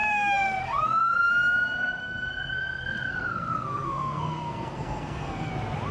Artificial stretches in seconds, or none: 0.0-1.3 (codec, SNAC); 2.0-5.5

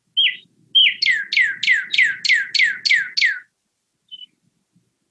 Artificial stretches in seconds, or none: none

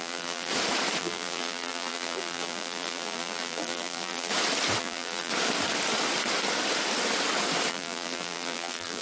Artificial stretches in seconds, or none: 0.0-0.5 (vocoder, BigVGAN v2); 1.0-4.3; 4.8-5.3; 7.7-9.0

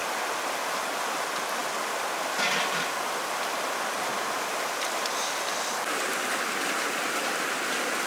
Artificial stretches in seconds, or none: none

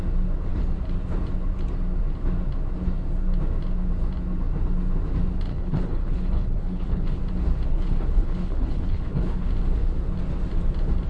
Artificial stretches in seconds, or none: 5.5-7.2 (codec, HILCodec); 7.7-9.5

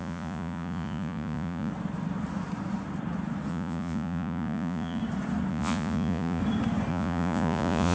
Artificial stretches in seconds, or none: 0.0-1.7 (vocoder, Vocos); 3.5-5.0; 5.5-6.4; 6.9-7.9

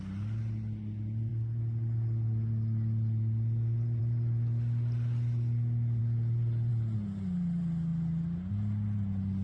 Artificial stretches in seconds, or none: none

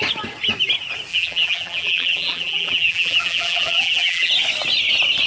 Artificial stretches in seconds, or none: 1.1-4.3 (vocoder, BigVGAN v2)